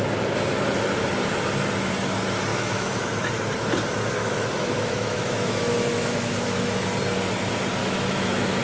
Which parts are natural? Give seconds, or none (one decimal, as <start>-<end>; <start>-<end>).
0.0-2.5; 3.3-4.2; 6.7-7.8